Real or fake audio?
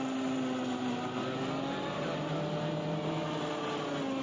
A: real